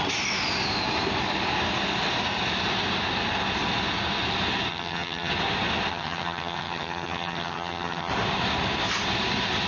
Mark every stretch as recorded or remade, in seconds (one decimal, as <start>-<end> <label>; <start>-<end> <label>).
0.0-4.7 recorded; 4.7-5.3 remade; 5.3-5.9 recorded; 5.9-8.1 remade; 8.1-9.7 recorded